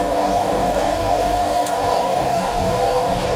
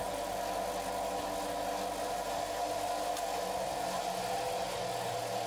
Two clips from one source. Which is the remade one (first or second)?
first